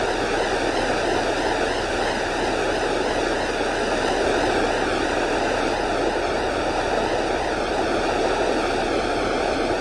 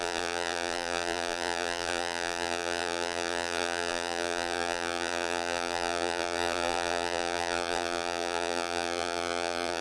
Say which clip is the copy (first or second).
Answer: second